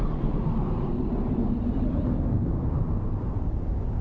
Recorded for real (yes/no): yes